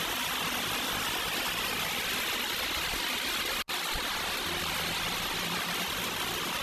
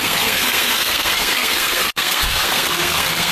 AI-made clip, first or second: second